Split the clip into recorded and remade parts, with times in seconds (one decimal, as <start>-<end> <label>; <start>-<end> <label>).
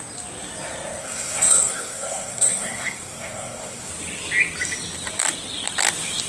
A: 0.0-1.0 recorded; 1.0-3.9 remade; 3.9-6.3 recorded